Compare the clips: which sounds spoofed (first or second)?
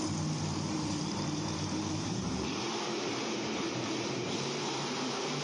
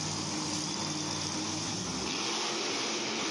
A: first